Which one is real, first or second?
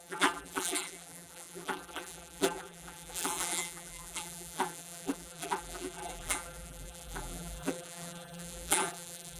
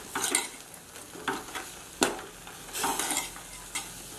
second